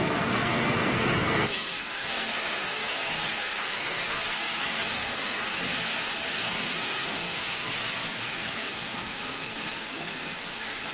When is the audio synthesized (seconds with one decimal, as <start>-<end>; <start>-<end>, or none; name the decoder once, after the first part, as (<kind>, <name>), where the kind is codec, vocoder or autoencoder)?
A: 0.0-7.7 (codec, SNAC); 8.2-10.9